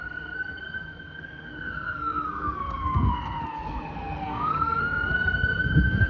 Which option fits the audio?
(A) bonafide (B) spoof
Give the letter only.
B